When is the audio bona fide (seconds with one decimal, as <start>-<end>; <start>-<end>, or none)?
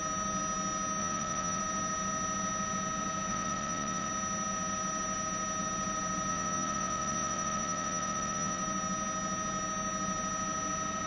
0.0-1.0; 1.6-3.3; 4.1-6.3; 8.6-11.1